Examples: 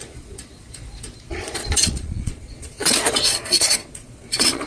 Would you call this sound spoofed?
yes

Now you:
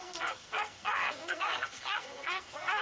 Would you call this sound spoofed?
yes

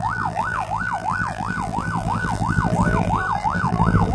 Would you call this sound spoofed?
yes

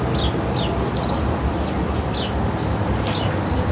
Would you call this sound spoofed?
no